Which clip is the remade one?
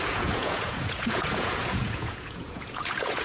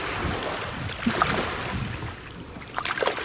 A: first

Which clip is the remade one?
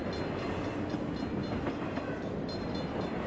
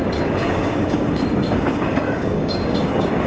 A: second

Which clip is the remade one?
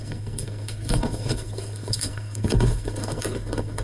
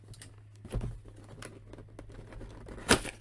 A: first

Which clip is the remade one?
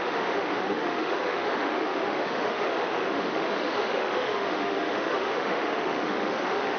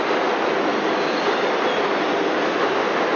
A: first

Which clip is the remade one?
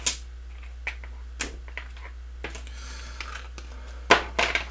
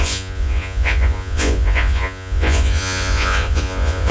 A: second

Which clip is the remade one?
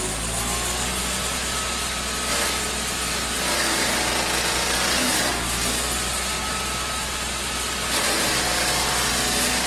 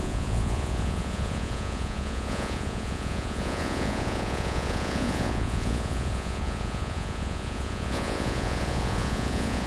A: second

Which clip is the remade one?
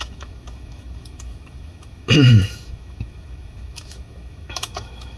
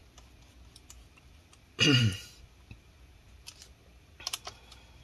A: first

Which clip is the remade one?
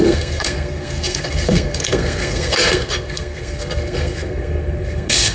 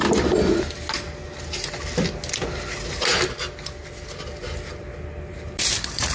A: first